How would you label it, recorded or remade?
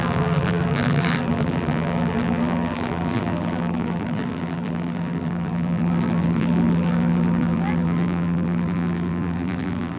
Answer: remade